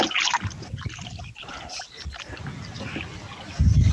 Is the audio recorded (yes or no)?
yes